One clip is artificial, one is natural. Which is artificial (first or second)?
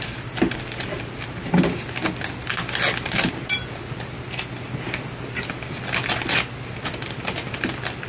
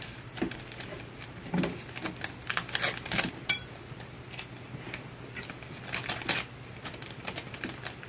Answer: second